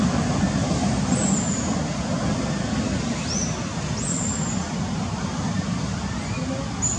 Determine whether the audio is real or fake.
real